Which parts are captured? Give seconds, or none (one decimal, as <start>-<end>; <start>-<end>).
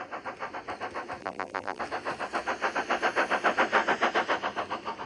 0.0-1.2; 1.8-5.1